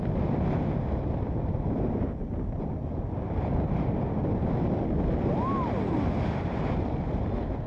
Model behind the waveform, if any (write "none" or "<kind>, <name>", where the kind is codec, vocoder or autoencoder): none